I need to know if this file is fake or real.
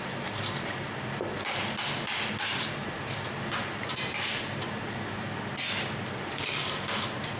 real